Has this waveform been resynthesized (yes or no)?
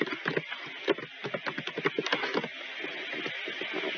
no